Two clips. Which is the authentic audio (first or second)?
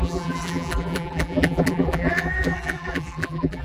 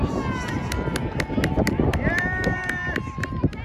second